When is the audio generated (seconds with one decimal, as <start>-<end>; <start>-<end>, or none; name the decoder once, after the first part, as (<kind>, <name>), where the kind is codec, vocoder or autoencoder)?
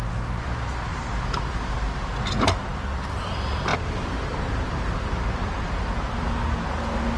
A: 0.9-2.1 (vocoder, BigVGAN v2); 3.7-6.1